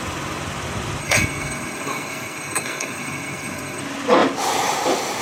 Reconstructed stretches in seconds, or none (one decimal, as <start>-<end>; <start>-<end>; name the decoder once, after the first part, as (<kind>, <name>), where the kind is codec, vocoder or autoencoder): 1.0-3.8 (codec, SNAC)